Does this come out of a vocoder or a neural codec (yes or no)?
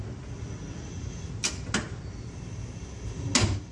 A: no